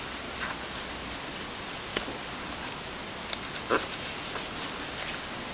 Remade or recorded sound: recorded